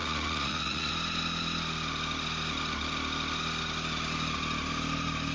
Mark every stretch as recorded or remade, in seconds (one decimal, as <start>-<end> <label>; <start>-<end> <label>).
0.0-0.9 remade; 0.9-5.3 recorded